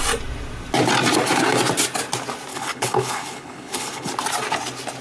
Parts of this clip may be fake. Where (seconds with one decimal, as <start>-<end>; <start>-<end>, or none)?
2.5-4.1